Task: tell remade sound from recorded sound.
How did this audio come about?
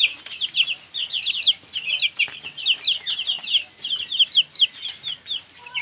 recorded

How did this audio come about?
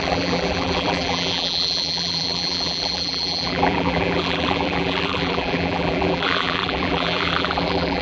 remade